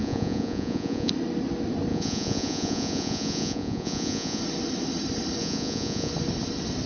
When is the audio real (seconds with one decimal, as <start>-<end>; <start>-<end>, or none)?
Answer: 1.1-1.9; 4.4-5.4; 6.1-6.9